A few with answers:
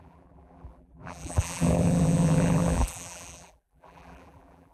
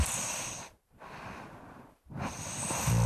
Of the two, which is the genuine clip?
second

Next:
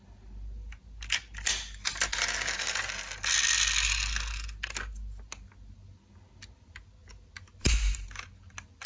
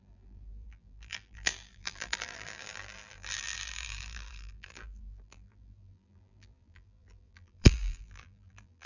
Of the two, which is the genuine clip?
first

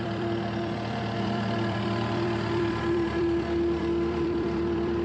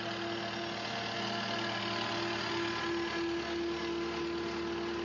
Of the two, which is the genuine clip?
second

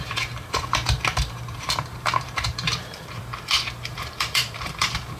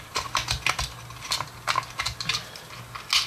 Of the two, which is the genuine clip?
second